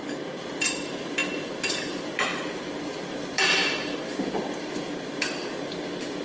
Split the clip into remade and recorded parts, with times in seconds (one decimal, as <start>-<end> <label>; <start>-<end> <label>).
0.0-6.2 recorded

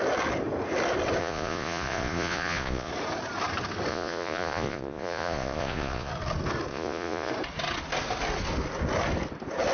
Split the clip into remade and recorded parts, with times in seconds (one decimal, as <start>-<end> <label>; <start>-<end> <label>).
0.0-1.2 recorded; 1.2-2.9 remade; 2.9-3.9 recorded; 3.9-6.1 remade; 6.1-6.7 recorded; 6.7-7.3 remade; 7.3-9.7 recorded

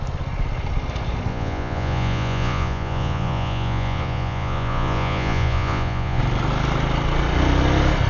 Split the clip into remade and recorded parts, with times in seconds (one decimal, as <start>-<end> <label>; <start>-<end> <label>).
0.0-1.3 recorded; 1.3-6.2 remade; 6.2-8.1 recorded